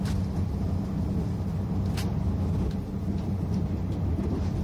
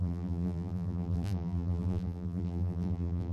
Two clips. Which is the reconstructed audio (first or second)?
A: second